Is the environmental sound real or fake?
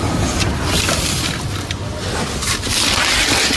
real